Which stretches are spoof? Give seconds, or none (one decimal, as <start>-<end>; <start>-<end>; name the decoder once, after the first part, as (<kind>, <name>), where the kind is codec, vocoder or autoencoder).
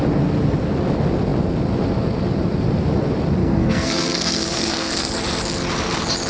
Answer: 3.4-5.1 (codec, SNAC)